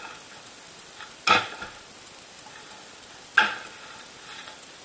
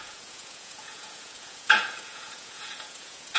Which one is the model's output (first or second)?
second